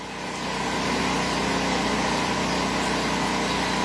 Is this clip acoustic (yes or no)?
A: yes